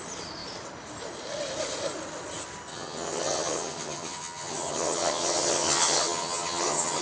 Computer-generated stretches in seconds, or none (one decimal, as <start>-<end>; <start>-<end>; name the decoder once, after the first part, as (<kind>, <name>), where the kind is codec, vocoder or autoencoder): 2.7-7.0 (vocoder, HiFi-GAN)